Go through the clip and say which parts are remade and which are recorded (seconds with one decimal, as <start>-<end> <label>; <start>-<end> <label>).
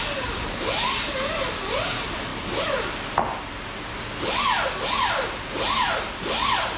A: 0.0-6.8 recorded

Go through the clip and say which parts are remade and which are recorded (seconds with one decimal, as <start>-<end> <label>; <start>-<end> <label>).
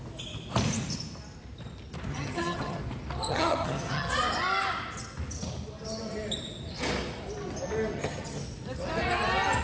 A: 0.0-2.1 recorded; 2.1-2.8 remade; 2.8-3.3 recorded; 3.3-4.1 remade; 4.1-7.9 recorded; 7.9-8.4 remade; 8.4-9.6 recorded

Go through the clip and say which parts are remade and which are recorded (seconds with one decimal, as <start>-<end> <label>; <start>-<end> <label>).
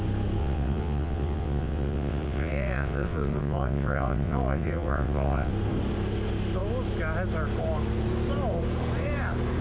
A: 0.0-0.4 recorded; 0.4-5.5 remade; 5.5-9.6 recorded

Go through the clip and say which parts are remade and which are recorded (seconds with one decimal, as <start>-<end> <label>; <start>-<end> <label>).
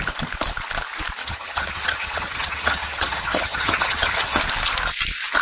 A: 0.0-1.2 recorded; 1.2-4.4 remade; 4.4-5.4 recorded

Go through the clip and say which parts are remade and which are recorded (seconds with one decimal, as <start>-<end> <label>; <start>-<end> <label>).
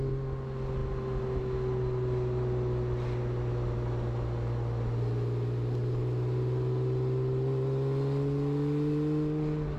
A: 0.0-9.8 recorded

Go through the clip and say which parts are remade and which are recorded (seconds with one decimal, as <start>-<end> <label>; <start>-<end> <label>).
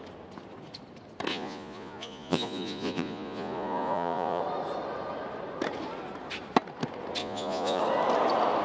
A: 0.0-1.3 recorded; 1.3-4.4 remade; 4.4-7.2 recorded; 7.2-7.8 remade; 7.8-8.6 recorded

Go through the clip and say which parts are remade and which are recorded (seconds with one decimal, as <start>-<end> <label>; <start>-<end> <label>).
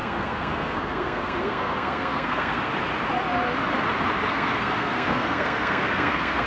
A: 0.0-2.7 remade; 2.7-4.3 recorded; 4.3-6.5 remade